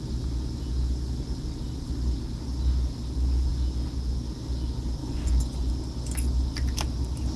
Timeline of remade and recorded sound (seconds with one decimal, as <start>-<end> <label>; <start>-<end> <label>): 0.0-5.0 recorded; 5.0-5.7 remade; 5.7-7.4 recorded